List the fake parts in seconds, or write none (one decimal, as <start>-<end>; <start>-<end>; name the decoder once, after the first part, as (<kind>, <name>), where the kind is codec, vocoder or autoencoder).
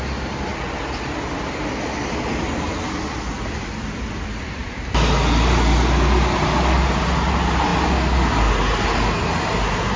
none